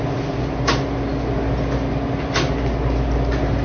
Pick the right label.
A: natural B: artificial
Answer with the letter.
A